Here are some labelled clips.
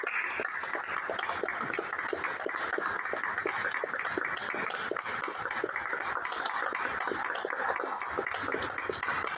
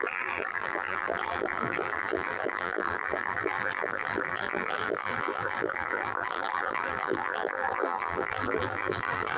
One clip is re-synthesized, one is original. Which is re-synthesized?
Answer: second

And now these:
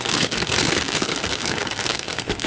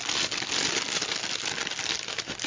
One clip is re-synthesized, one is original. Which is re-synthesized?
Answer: first